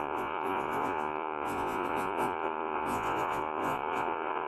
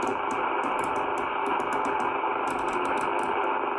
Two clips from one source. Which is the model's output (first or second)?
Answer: first